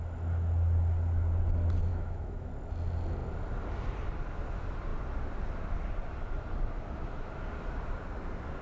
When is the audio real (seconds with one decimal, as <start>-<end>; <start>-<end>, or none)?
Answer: 0.0-1.9; 2.5-8.6